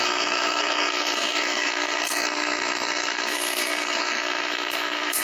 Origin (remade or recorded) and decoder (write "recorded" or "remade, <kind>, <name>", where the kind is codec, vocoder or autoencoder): remade, codec, SNAC